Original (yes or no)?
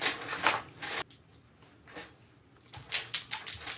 yes